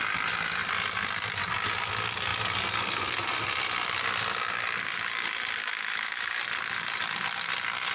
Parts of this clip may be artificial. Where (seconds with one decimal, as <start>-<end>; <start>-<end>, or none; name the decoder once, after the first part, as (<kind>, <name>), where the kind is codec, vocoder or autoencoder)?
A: 5.6-6.4 (autoencoder, DAC-VAE)